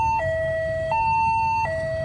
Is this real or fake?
fake